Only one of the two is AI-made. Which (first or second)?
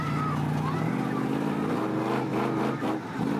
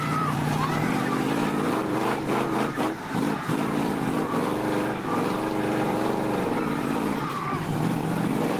second